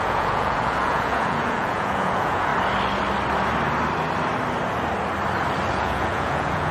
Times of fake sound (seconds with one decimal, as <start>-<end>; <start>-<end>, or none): 0.0-2.5; 5.7-6.7